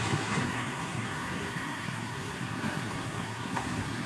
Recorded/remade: remade